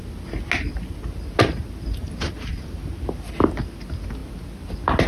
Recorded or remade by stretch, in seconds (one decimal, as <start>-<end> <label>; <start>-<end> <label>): 0.0-1.6 recorded; 1.6-2.9 remade; 2.9-5.1 recorded